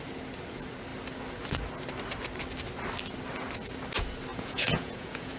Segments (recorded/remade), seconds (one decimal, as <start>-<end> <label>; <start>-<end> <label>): 0.0-4.3 recorded; 4.3-5.4 remade